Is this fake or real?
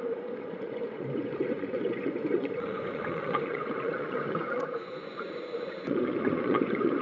fake